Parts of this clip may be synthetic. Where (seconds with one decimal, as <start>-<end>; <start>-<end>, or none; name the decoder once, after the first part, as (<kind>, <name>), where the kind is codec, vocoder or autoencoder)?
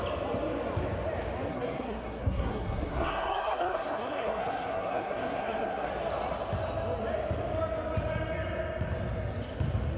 1.5-5.9 (codec, SNAC)